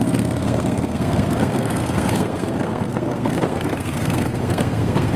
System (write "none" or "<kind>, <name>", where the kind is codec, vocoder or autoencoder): codec, SNAC